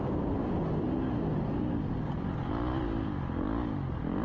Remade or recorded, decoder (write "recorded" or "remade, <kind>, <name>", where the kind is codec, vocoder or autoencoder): recorded